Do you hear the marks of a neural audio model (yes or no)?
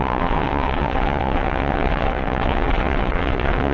yes